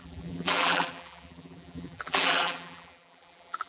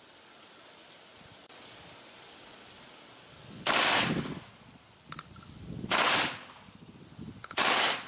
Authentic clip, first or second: second